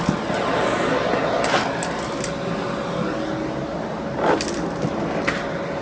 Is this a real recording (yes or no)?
yes